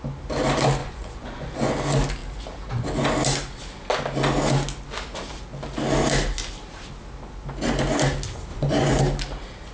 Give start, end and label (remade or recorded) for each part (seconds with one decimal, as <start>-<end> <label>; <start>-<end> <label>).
0.0-0.8 recorded; 0.8-1.7 remade; 1.7-8.5 recorded; 8.5-9.0 remade; 9.0-9.7 recorded